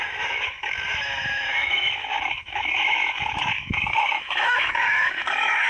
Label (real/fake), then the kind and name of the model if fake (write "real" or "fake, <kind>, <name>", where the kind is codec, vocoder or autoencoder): fake, autoencoder, DAC-VAE